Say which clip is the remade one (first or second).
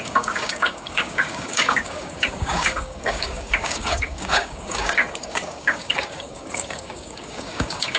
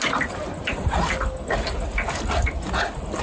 first